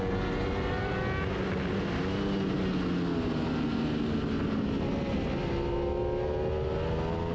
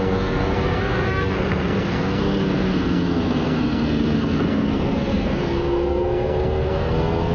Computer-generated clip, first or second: second